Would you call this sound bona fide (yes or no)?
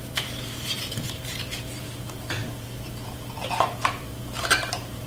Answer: no